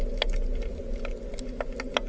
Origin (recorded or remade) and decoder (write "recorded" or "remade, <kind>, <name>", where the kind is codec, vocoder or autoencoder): recorded